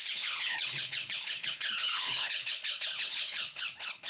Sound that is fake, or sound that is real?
fake